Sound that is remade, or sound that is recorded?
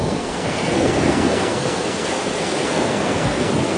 remade